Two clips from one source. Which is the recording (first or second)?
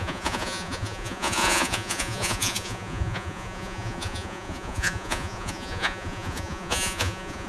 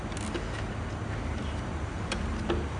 second